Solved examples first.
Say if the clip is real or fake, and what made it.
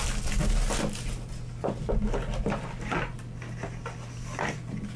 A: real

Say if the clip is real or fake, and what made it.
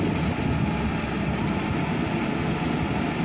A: real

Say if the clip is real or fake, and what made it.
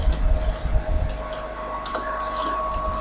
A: real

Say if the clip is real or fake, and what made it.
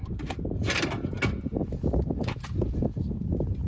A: real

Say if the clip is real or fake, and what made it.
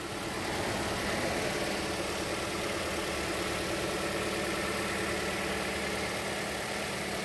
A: real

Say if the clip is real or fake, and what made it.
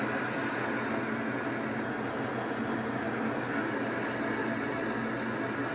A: real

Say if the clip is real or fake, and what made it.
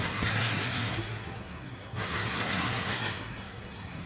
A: fake, codec, SNAC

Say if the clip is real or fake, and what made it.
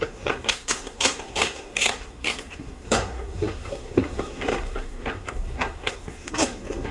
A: fake, codec, SNAC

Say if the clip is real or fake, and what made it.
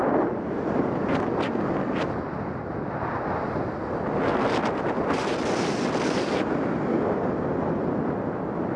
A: real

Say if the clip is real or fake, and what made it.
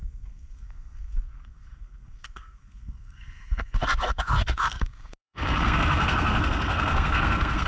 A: fake, codec, SNAC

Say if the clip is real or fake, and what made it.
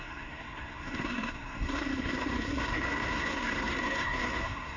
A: fake, codec, SNAC